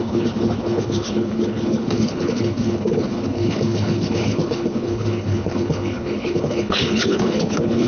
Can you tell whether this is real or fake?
fake